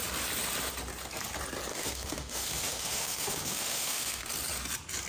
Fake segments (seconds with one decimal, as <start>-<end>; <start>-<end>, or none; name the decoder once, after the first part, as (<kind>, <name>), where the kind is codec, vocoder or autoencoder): 1.7-4.3 (autoencoder, DAC-VAE)